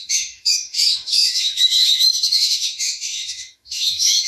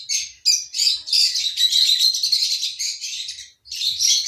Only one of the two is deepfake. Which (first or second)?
first